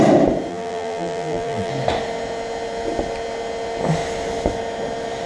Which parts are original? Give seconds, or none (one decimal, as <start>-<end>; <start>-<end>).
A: 0.0-0.5; 1.7-5.3